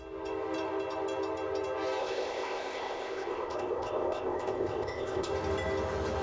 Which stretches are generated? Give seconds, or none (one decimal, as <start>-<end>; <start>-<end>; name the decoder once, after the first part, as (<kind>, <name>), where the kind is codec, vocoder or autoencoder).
2.0-5.3 (codec, ZipCodec)